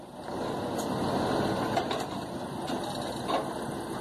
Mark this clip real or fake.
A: real